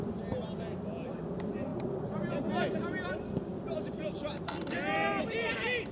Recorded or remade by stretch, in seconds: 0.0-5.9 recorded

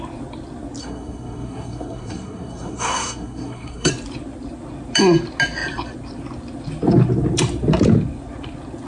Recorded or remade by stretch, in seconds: 0.0-0.8 recorded; 0.8-3.9 remade; 3.9-8.9 recorded

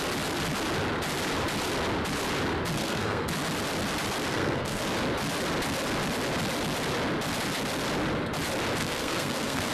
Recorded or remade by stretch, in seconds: 0.0-2.7 recorded; 2.7-3.3 remade; 3.3-4.3 recorded; 4.3-4.8 remade; 4.8-8.8 recorded; 8.8-9.7 remade

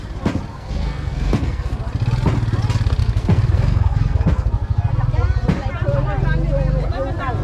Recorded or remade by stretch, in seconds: 0.0-0.5 recorded; 0.5-1.8 remade; 1.8-3.0 recorded; 3.0-4.9 remade; 4.9-7.4 recorded

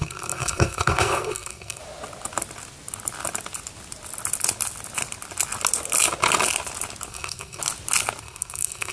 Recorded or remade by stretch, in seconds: 0.0-1.8 remade; 1.8-7.1 recorded; 7.1-7.6 remade; 7.6-8.2 recorded; 8.2-8.9 remade

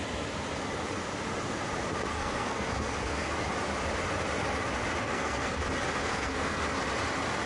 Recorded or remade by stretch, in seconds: 0.0-2.1 recorded; 2.1-3.3 remade; 3.3-5.0 recorded; 5.0-5.6 remade; 5.6-6.0 recorded; 6.0-6.6 remade; 6.6-7.5 recorded